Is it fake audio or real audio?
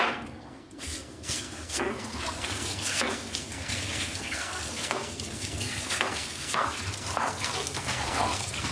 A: fake